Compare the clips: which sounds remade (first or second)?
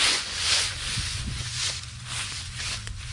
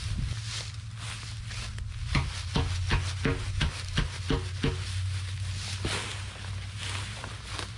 first